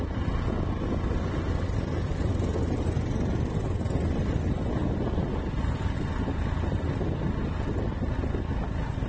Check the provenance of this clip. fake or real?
real